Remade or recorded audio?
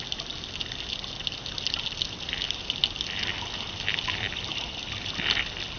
recorded